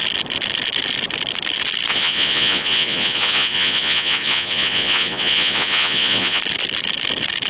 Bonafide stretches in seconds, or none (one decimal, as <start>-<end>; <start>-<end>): 0.0-1.9; 6.4-7.5